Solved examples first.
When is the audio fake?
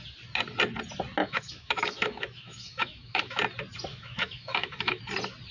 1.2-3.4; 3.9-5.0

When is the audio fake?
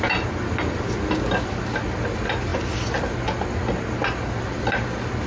none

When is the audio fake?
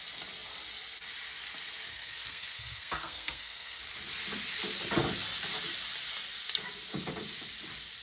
1.9-3.8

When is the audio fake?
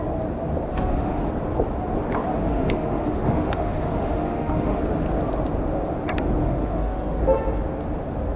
0.7-1.3; 2.5-4.8; 6.4-7.2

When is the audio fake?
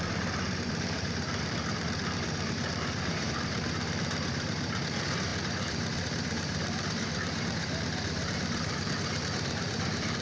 0.0-10.2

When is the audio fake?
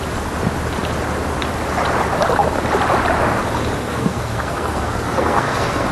3.8-5.9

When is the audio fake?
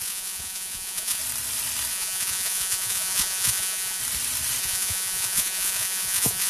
0.0-1.2; 1.9-4.0; 4.6-6.5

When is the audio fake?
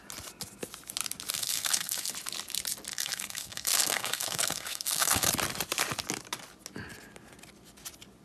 1.3-2.1; 2.9-5.3